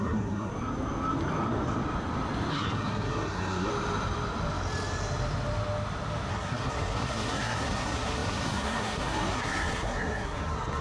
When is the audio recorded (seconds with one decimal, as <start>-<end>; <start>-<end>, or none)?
0.5-2.5; 3.7-6.3

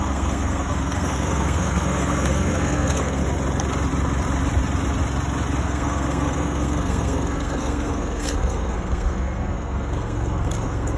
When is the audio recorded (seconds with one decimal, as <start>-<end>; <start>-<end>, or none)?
3.2-5.6